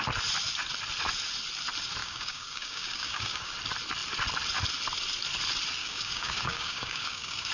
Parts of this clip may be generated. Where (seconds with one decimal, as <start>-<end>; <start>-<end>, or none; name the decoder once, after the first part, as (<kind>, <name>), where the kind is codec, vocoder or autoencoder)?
2.0-3.5 (codec, DAC); 5.8-7.5